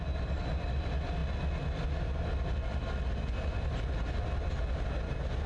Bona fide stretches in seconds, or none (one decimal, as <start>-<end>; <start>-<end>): 0.0-5.5